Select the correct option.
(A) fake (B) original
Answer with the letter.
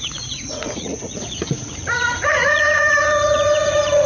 A